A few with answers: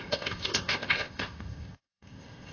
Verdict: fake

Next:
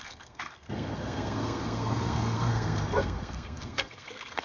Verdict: fake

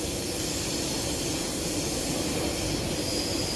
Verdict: real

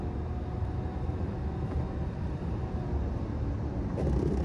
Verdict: real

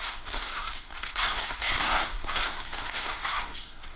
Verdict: fake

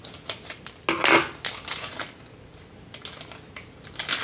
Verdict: real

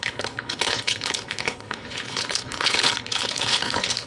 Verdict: fake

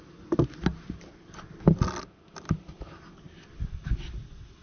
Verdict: real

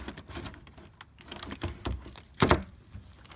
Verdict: real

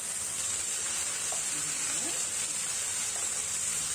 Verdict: real